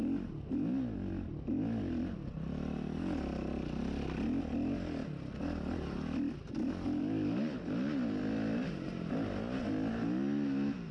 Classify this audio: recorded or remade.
recorded